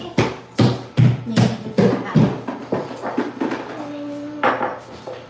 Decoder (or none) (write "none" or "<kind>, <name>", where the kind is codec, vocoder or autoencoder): none